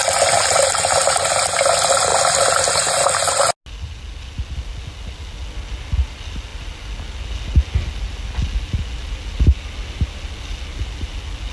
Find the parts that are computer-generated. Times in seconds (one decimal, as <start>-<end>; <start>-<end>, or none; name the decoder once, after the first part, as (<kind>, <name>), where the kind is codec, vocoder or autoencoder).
none